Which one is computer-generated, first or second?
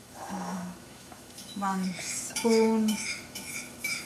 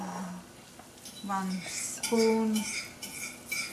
first